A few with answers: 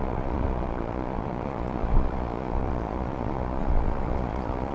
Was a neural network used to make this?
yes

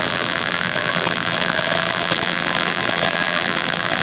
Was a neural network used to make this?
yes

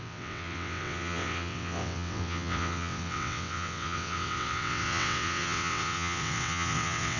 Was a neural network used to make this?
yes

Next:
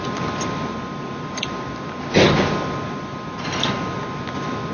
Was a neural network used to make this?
no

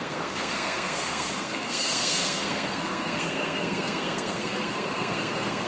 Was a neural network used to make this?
yes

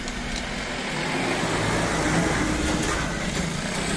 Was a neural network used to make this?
no